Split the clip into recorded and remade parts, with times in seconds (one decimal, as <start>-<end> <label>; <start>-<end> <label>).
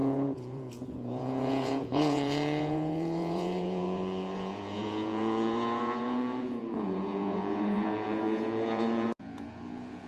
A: 0.0-10.1 remade